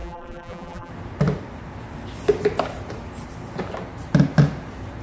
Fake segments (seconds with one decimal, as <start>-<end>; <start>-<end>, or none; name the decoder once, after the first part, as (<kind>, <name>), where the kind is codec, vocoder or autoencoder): 0.0-0.9 (vocoder, BigVGAN v2)